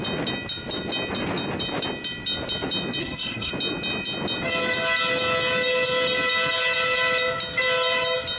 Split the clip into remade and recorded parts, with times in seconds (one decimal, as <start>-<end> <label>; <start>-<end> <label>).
0.0-3.0 recorded; 3.0-3.5 remade; 3.5-8.4 recorded

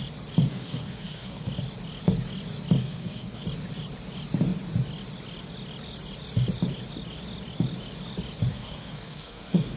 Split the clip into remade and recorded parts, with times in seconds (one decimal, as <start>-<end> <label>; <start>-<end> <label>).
0.0-0.5 recorded; 0.5-1.5 remade; 1.5-2.8 recorded; 2.8-3.4 remade; 3.4-8.5 recorded; 8.5-9.8 remade

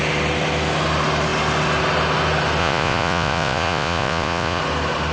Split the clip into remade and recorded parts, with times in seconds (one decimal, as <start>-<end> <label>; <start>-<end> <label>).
0.0-2.6 recorded; 2.6-4.6 remade; 4.6-5.1 recorded

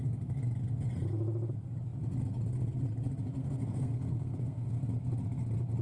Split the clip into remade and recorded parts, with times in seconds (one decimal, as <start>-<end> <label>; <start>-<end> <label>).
0.0-3.4 recorded; 3.4-4.8 remade; 4.8-5.8 recorded

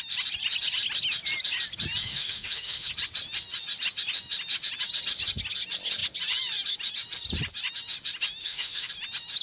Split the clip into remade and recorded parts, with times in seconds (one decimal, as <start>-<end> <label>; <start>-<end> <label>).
0.0-2.0 recorded; 2.0-2.9 remade; 2.9-8.4 recorded; 8.4-8.9 remade; 8.9-9.4 recorded